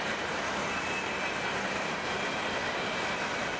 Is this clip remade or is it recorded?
recorded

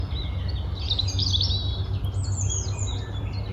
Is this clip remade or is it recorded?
recorded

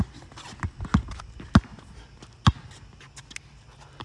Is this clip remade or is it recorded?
recorded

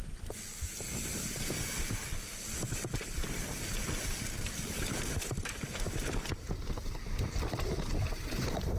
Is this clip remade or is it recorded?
remade